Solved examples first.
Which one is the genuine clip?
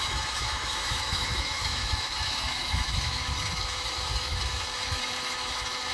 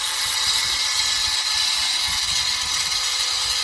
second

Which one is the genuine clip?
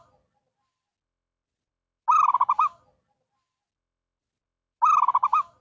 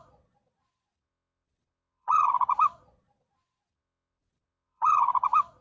first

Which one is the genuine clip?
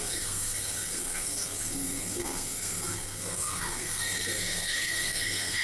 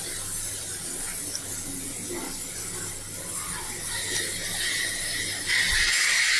second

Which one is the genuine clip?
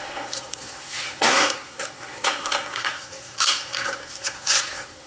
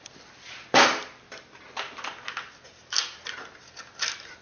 second